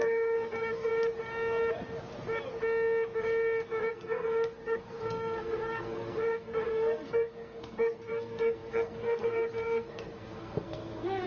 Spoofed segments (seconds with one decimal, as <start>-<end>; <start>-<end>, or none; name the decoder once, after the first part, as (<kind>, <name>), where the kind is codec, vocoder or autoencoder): 0.0-0.9 (codec, SNAC); 3.9-11.3